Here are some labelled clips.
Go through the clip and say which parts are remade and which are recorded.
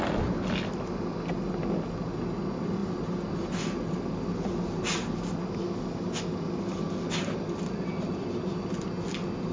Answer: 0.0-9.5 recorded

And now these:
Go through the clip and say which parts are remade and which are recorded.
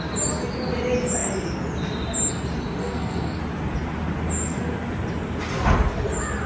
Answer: 0.0-2.8 recorded; 2.8-3.4 remade; 3.4-6.5 recorded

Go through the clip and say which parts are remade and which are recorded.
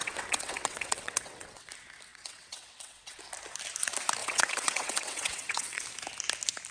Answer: 0.0-1.7 remade; 1.7-2.1 recorded; 2.1-3.2 remade; 3.2-4.2 recorded; 4.2-5.8 remade; 5.8-6.7 recorded